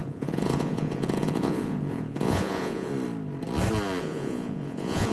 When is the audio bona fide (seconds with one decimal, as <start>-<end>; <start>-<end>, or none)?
2.9-4.0